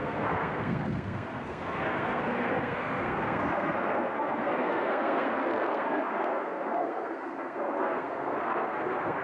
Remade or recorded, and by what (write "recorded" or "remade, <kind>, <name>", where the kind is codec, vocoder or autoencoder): remade, codec, SNAC